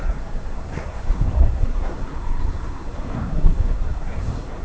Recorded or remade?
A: remade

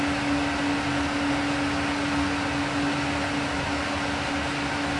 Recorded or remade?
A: recorded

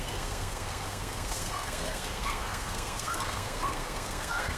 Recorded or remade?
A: remade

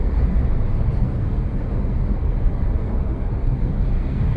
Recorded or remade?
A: remade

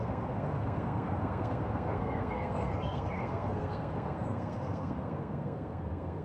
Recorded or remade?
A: remade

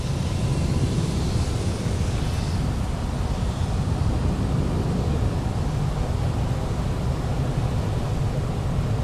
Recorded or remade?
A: recorded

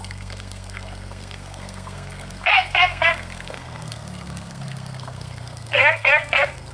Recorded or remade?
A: remade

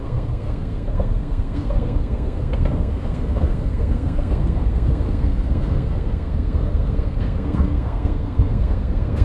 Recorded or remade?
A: remade